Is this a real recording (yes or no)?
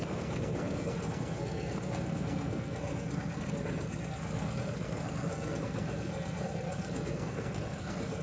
no